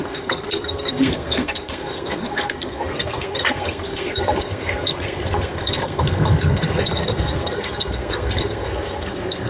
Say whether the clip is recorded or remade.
remade